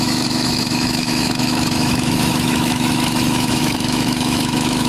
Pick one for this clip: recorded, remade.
remade